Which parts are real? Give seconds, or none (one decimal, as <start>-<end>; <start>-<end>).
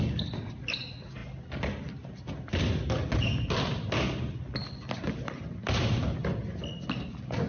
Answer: 0.0-7.5